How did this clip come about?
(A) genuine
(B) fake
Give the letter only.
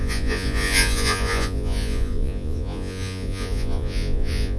B